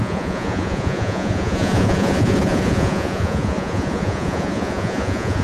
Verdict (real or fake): fake